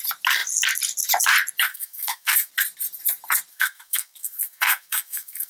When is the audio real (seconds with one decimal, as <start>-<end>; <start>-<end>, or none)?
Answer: 0.0-1.7; 2.5-3.5